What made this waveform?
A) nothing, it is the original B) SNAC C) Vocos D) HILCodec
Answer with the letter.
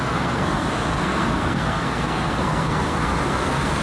B